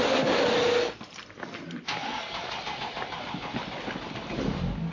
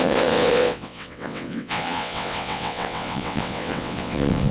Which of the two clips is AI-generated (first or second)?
second